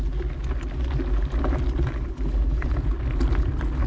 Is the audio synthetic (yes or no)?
no